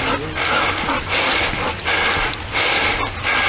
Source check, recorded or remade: recorded